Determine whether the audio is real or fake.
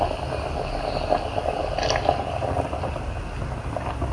real